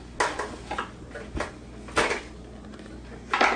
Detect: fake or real real